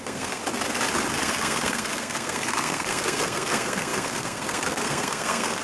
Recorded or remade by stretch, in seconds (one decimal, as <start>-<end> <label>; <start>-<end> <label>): 0.0-0.4 remade; 0.4-1.2 recorded; 1.2-5.6 remade